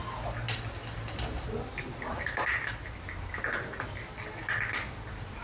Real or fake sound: real